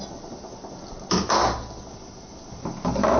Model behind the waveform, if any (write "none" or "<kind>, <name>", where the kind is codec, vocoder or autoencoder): none